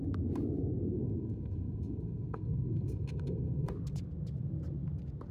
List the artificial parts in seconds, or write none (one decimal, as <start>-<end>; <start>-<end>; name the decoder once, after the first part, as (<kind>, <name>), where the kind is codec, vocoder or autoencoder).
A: 0.9-3.7 (codec, SNAC)